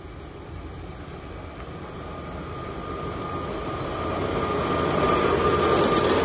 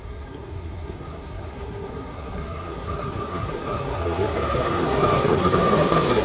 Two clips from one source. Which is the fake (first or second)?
second